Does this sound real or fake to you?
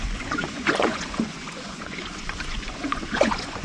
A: fake